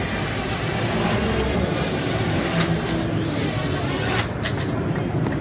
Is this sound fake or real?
real